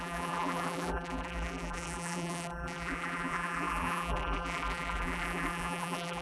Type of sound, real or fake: fake